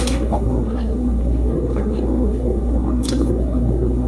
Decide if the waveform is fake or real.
fake